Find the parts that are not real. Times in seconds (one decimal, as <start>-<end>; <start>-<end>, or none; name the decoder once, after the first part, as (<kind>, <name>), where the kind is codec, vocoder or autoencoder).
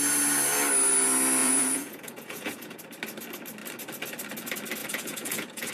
1.4-2.8 (vocoder, Vocos); 4.8-5.7